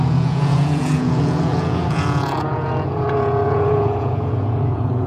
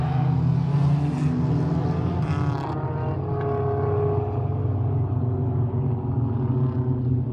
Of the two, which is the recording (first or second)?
second